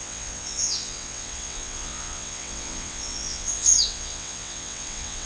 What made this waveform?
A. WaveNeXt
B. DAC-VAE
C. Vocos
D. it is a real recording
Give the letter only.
A